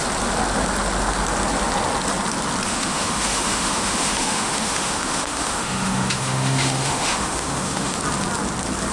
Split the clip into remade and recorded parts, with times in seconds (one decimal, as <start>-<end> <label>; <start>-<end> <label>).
0.0-2.7 recorded; 2.7-8.0 remade; 8.0-8.9 recorded